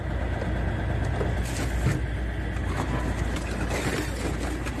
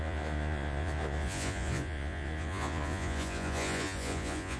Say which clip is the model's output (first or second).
second